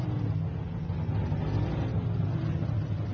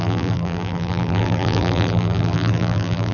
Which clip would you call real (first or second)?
first